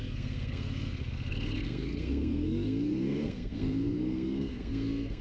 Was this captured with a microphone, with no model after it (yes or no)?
no